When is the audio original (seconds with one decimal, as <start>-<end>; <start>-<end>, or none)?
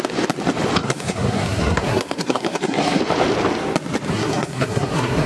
0.0-0.8; 3.0-4.1